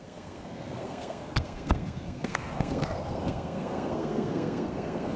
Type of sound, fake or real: fake